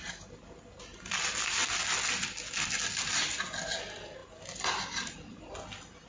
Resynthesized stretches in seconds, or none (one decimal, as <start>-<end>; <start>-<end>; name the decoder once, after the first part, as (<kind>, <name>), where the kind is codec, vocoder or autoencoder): 0.0-0.8 (vocoder, BigVGAN v2)